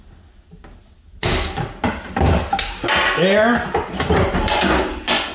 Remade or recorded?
recorded